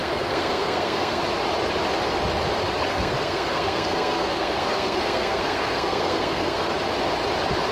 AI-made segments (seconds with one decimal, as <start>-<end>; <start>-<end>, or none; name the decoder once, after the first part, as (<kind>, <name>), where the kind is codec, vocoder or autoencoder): 0.0-1.2 (codec, SNAC); 2.9-6.7